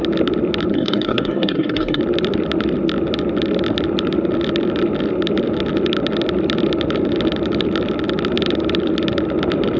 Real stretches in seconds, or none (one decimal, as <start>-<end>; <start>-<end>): 0.0-0.7; 2.0-9.8